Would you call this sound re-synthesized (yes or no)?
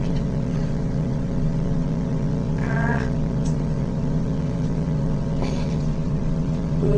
yes